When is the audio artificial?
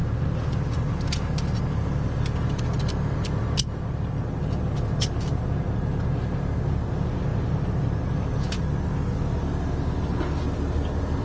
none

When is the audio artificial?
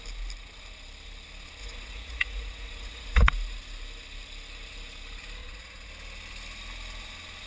1.6-3.3 (vocoder, Vocos); 5.4-5.9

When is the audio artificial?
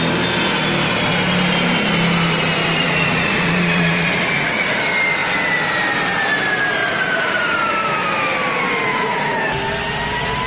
2.6-4.8 (vocoder, Vocos); 6.8-7.7; 8.9-9.4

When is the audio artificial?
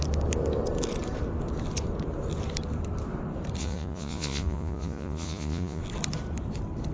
3.6-5.8 (vocoder, Vocos)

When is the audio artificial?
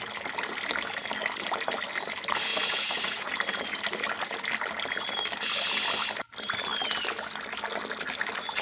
2.5-3.3 (vocoder, Vocos)